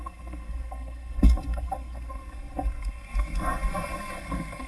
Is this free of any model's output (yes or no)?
no